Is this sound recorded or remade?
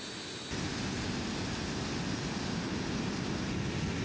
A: recorded